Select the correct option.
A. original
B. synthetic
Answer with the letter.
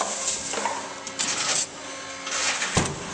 A